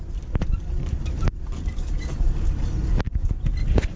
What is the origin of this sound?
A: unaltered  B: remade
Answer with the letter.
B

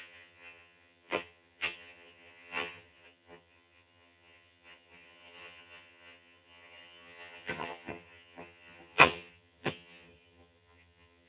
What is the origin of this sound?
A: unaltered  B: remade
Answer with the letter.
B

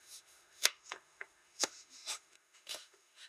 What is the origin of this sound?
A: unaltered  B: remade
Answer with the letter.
B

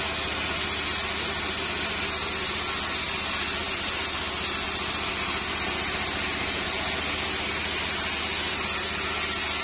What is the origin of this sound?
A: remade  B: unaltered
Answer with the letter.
B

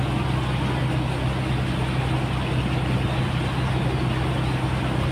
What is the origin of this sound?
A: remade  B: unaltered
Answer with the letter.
B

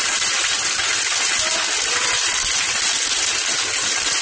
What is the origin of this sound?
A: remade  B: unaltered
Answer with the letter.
B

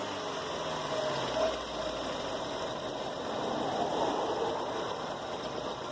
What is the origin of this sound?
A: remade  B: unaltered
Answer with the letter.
B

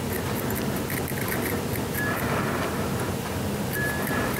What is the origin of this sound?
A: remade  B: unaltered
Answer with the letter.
B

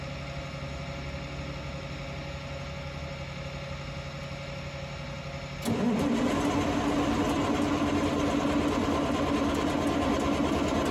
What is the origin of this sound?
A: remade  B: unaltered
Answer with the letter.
B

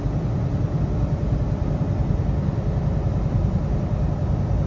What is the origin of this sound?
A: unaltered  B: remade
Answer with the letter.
A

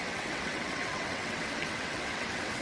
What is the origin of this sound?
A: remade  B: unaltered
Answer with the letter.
A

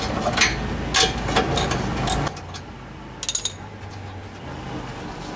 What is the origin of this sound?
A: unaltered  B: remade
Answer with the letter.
A